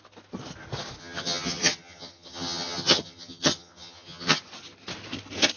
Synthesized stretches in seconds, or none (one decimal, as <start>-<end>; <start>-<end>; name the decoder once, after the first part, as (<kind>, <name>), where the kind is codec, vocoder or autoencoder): 1.0-4.4 (vocoder, HiFi-GAN)